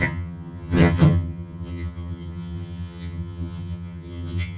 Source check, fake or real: fake